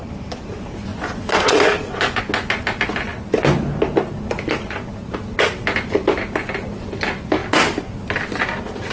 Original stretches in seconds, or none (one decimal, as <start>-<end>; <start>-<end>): 0.0-0.9; 2.2-8.9